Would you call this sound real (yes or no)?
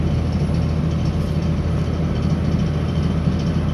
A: yes